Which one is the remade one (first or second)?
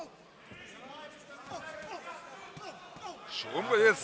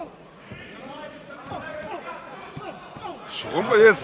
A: second